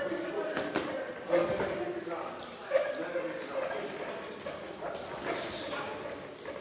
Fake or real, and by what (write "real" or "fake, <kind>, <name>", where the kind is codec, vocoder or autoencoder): real